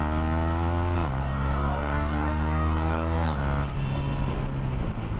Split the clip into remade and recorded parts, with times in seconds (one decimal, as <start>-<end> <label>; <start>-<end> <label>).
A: 0.0-1.2 recorded; 1.2-3.4 remade; 3.4-5.2 recorded